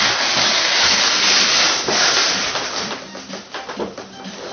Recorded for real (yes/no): yes